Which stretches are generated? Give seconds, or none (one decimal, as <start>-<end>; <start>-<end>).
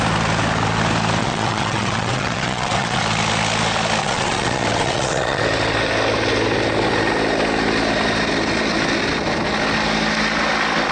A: 1.2-3.0; 4.0-5.4